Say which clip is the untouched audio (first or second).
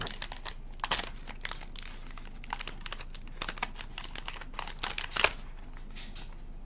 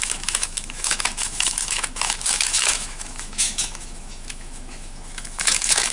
first